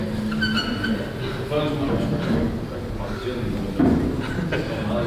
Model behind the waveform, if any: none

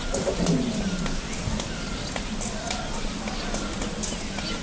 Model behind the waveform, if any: none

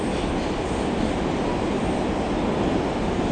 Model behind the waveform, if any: none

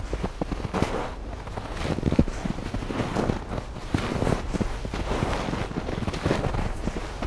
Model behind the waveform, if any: none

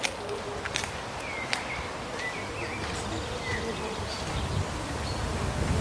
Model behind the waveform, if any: none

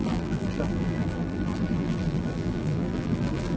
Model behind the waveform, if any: vocoder, BigVGAN v2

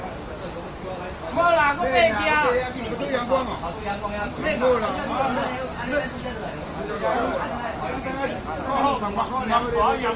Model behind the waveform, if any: none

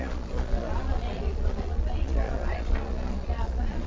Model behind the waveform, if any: vocoder, Vocos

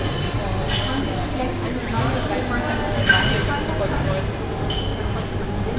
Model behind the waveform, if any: none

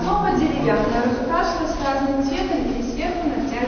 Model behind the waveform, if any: none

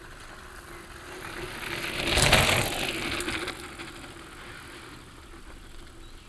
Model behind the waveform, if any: none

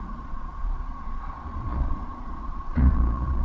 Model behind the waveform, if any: vocoder, Vocos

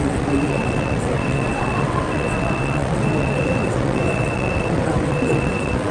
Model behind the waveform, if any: vocoder, WaveNeXt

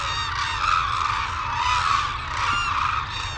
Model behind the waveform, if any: none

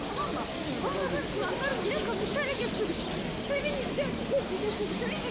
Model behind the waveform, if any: none